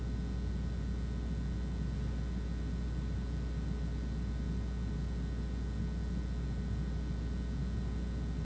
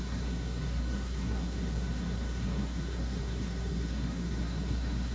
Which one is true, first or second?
first